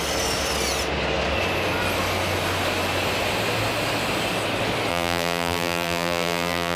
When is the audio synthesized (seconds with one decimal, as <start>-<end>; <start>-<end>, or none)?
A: 4.9-6.8